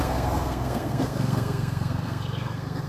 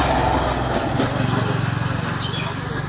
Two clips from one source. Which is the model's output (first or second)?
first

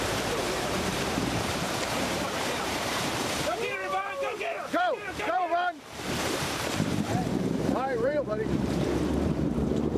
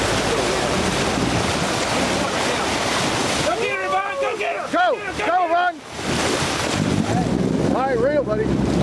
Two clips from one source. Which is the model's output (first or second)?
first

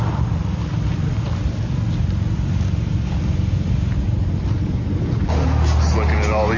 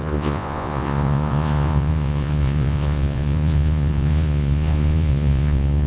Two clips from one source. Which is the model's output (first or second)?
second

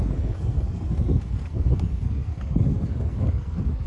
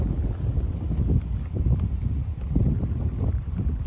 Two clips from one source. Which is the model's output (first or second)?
first